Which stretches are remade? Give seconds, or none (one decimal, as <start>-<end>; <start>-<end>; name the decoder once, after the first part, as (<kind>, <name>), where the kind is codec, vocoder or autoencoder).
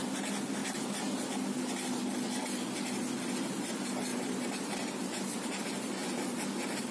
4.1-5.6 (vocoder, BigVGAN v2)